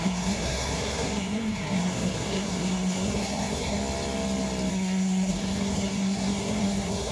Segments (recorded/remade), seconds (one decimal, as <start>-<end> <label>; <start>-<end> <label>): 0.0-3.8 remade; 3.8-4.7 recorded; 4.7-7.1 remade